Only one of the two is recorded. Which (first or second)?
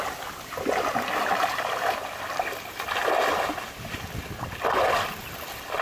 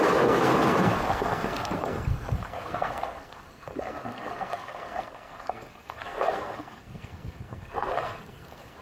first